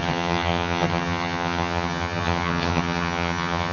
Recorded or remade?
remade